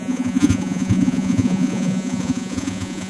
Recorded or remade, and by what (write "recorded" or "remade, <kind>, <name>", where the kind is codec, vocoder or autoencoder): remade, vocoder, Vocos